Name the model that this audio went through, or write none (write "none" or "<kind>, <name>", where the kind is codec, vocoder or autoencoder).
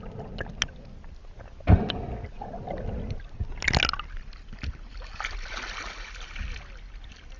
none